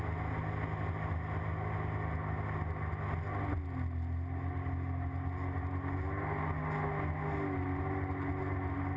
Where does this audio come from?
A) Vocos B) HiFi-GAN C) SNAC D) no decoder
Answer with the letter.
D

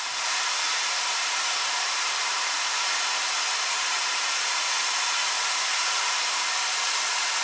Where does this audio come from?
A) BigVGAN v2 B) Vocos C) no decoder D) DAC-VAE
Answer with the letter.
A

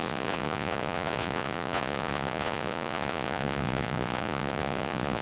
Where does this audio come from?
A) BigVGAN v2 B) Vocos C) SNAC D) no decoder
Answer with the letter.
B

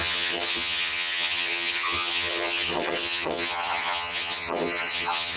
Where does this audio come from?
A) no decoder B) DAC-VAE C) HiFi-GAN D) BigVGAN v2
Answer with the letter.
C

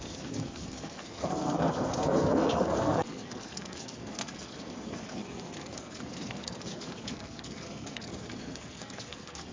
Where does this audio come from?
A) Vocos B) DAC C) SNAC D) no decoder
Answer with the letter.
C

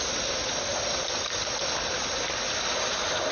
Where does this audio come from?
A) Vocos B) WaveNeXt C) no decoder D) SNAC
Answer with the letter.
C